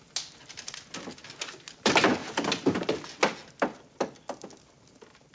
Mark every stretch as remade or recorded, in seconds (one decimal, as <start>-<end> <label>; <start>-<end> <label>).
0.0-5.3 recorded